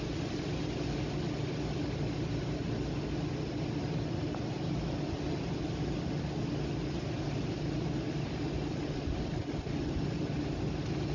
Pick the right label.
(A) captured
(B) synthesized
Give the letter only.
A